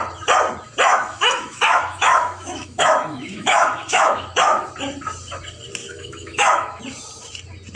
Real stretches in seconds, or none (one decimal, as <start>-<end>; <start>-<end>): 0.0-0.9; 4.7-5.8; 6.8-7.8

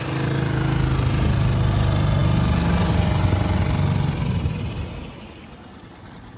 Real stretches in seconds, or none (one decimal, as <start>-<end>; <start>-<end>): 0.0-6.4

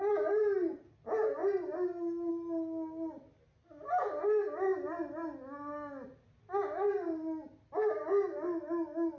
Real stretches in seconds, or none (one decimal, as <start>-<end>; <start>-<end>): 0.0-9.2

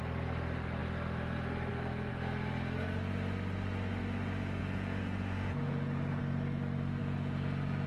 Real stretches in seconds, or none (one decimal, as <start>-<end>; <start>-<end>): 0.0-4.6; 6.2-7.0

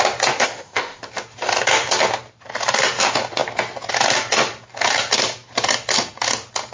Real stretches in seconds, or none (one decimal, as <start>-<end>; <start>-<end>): 0.0-0.4; 1.0-6.7

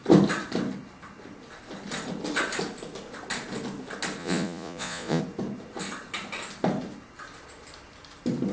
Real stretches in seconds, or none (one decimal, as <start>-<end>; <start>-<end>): 0.0-4.2; 5.2-8.5

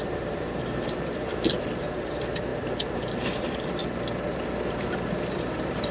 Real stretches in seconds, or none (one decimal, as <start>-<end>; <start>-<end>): 3.8-4.7